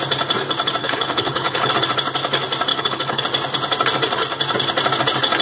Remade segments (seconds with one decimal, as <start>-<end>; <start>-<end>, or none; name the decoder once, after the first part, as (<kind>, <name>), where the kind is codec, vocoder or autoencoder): 0.8-1.7 (codec, HILCodec); 2.7-3.2